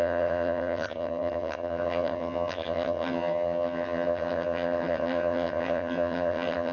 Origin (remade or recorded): remade